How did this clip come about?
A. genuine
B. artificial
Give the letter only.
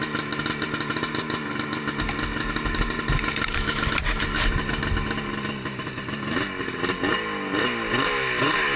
A